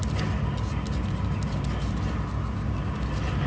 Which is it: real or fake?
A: real